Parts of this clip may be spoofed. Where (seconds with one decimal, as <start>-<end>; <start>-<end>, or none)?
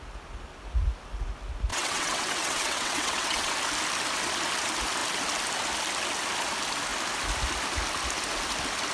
1.7-3.5